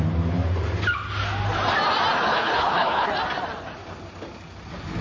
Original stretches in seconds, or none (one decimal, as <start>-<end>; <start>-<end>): 0.0-2.3; 3.1-5.0